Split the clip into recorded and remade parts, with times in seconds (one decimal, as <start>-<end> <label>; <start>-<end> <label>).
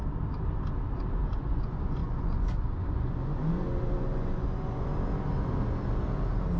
0.0-1.4 recorded; 1.4-4.9 remade; 4.9-6.6 recorded